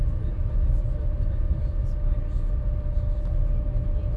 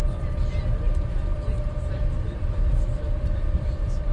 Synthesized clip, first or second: second